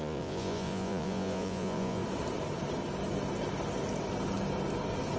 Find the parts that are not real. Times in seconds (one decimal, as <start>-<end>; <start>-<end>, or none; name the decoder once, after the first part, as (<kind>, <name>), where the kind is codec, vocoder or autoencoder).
0.0-2.0 (vocoder, Vocos)